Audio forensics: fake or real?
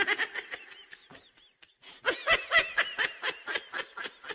real